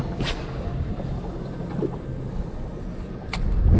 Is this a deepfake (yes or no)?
no